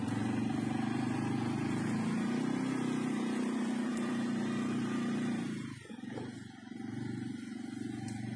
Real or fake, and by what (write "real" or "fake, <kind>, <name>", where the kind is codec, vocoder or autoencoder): fake, vocoder, BigVGAN v2